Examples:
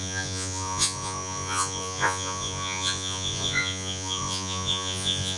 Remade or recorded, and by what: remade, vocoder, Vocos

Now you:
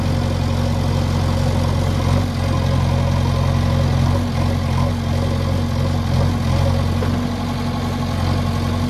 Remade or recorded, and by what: recorded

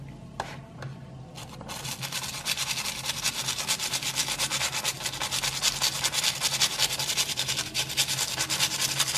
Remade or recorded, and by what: recorded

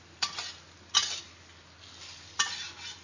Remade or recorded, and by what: recorded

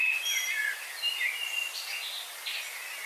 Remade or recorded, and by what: recorded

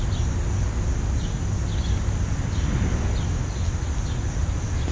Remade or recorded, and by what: recorded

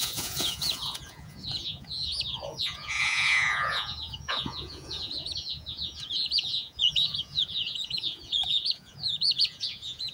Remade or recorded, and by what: remade, vocoder, Vocos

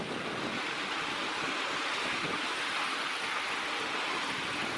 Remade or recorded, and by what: recorded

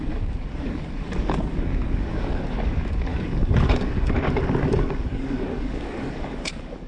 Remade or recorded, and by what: remade, codec, DAC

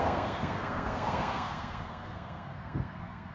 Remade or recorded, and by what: remade, codec, SNAC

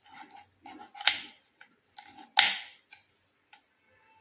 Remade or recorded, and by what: recorded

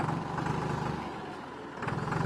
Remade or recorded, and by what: recorded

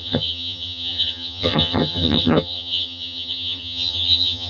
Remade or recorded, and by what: remade, vocoder, HiFi-GAN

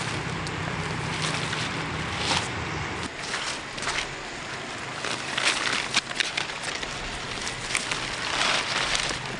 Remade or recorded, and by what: recorded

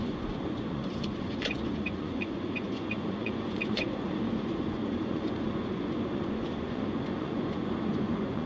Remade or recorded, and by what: remade, vocoder, Vocos